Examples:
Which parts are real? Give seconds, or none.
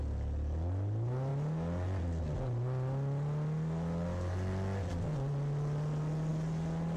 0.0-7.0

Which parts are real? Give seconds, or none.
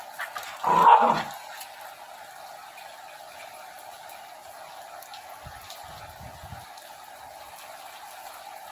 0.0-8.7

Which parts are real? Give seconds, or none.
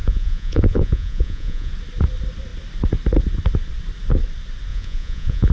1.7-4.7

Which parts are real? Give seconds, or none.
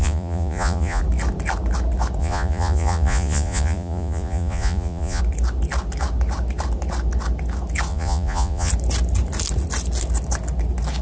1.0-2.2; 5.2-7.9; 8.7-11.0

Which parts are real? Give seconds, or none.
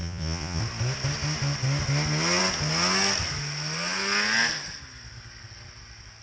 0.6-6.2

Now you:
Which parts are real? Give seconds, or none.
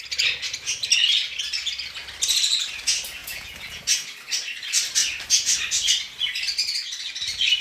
0.0-3.2; 3.8-7.6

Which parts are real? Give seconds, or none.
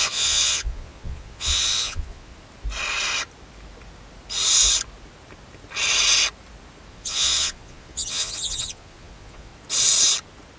2.3-6.9; 9.5-10.6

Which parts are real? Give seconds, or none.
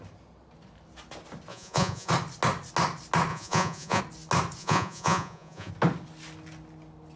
0.0-1.5; 2.1-3.3; 4.0-4.6; 5.7-7.2